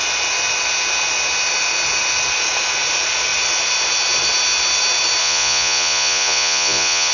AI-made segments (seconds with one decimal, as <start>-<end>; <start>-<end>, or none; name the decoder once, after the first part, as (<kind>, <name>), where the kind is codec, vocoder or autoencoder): 5.2-7.1 (vocoder, Vocos)